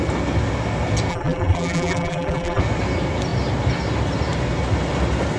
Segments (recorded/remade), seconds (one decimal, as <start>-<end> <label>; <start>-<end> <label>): 0.0-1.1 recorded; 1.1-2.6 remade; 2.6-5.4 recorded